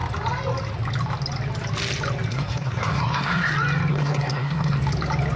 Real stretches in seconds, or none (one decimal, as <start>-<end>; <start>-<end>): 0.0-2.3; 3.5-3.9; 4.8-5.4